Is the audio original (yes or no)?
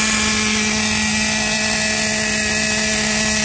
yes